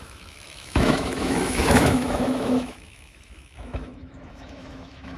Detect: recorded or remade remade